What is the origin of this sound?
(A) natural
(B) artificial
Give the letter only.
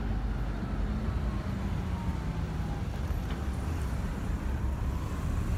A